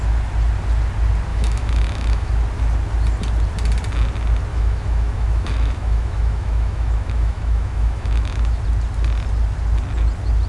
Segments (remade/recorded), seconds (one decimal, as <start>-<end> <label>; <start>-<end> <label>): 0.0-1.3 recorded; 1.3-2.3 remade; 2.3-4.5 recorded; 4.5-8.6 remade; 8.6-10.5 recorded